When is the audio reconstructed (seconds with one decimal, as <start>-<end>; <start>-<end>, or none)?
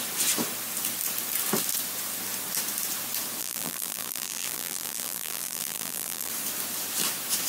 3.4-6.3